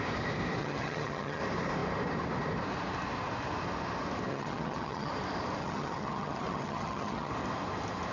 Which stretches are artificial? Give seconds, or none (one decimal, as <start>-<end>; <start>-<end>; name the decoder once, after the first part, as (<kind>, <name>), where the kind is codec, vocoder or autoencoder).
0.6-1.4 (vocoder, HiFi-GAN); 4.3-5.1; 5.6-7.3

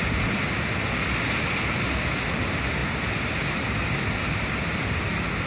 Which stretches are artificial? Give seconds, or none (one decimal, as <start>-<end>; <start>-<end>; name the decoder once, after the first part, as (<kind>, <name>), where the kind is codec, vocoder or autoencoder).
none

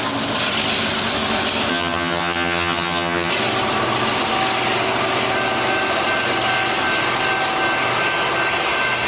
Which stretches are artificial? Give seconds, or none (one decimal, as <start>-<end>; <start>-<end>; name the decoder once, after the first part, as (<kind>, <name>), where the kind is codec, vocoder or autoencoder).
1.7-3.3 (vocoder, HiFi-GAN)